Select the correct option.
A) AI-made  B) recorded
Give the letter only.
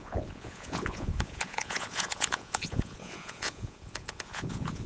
A